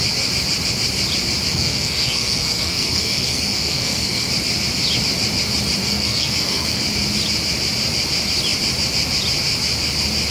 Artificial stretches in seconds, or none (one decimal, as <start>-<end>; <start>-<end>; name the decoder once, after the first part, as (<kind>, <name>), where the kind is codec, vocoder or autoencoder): 1.5-4.3 (codec, SNAC); 5.8-6.8